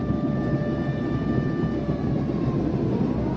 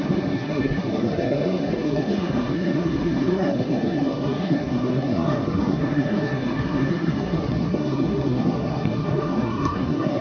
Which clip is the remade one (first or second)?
second